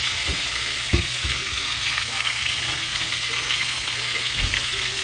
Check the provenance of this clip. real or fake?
fake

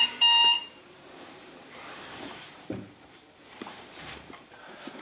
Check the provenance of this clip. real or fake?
fake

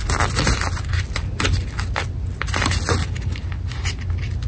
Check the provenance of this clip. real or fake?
real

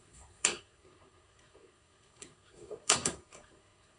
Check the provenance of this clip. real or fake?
fake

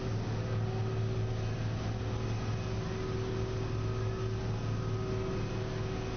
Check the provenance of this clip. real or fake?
real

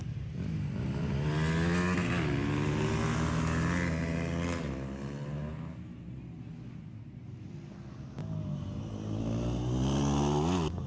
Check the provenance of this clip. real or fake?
real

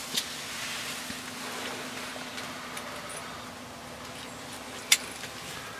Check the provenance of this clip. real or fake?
real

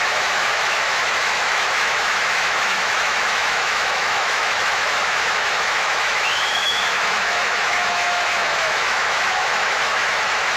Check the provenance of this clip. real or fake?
fake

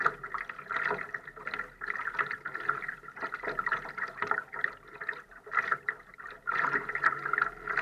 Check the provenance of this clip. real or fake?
real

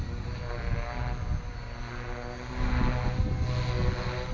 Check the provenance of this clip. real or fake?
real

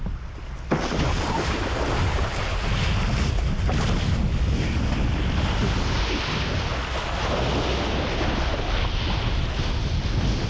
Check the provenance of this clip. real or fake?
real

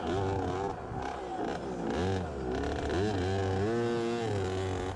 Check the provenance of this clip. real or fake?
real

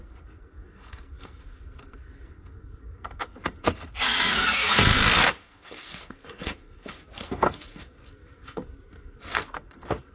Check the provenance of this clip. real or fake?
fake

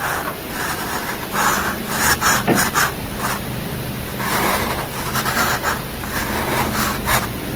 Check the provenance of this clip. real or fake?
fake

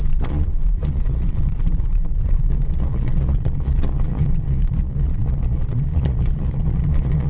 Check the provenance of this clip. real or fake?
fake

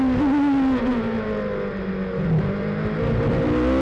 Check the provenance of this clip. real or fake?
real